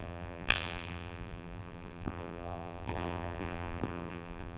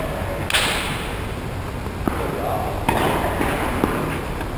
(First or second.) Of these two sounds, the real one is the second